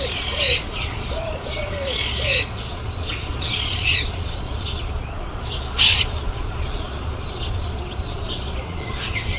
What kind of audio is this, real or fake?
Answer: fake